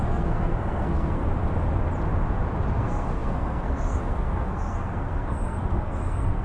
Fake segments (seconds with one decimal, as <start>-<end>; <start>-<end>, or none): 0.0-1.2; 2.7-6.4